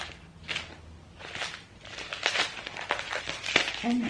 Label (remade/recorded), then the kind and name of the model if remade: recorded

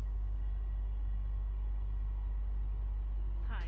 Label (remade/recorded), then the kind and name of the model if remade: recorded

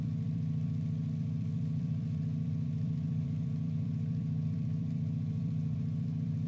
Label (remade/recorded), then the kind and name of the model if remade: remade, vocoder, BigVGAN v2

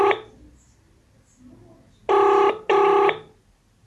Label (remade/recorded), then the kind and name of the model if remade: recorded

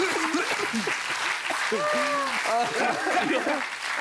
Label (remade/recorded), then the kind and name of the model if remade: recorded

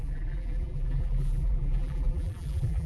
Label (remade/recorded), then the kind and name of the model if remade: remade, vocoder, BigVGAN v2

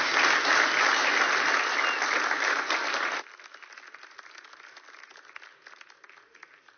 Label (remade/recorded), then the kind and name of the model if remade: recorded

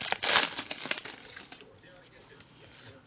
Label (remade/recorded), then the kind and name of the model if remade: remade, vocoder, BigVGAN v2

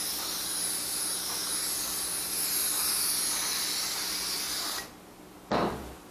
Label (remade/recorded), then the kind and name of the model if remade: recorded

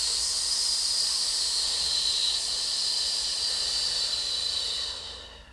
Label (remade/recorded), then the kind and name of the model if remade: remade, vocoder, BigVGAN v2